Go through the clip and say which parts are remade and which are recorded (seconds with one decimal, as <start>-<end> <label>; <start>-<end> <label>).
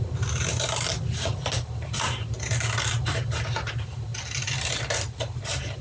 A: 0.0-5.8 recorded